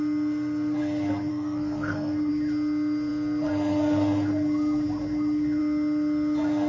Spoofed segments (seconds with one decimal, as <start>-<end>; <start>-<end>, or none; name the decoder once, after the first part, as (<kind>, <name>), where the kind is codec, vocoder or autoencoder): 1.3-2.3 (codec, SNAC)